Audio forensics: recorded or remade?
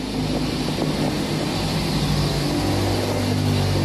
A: recorded